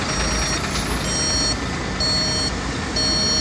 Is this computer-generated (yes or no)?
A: no